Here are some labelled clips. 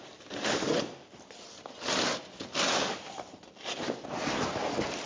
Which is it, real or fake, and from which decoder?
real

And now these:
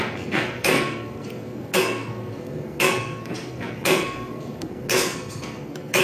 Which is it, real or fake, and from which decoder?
fake, codec, SNAC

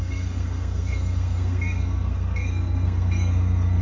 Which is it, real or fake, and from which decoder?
fake, codec, SNAC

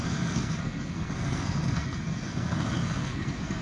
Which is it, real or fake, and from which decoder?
fake, codec, SNAC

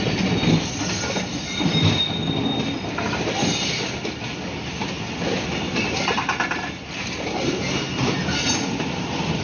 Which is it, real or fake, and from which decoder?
real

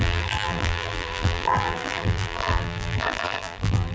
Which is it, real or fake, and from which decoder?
fake, vocoder, BigVGAN v2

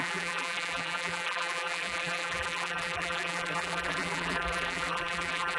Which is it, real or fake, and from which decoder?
fake, vocoder, BigVGAN v2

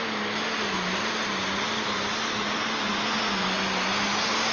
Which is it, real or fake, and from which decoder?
real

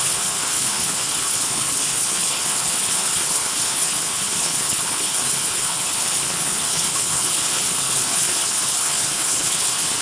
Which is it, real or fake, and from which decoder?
fake, codec, HILCodec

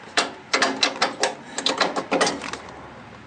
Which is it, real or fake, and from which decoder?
real